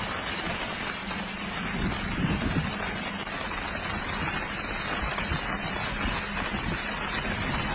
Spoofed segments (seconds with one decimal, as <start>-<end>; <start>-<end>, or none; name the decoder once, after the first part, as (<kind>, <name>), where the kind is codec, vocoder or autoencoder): none